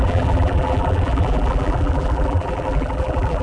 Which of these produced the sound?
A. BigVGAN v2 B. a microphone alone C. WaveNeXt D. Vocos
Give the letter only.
A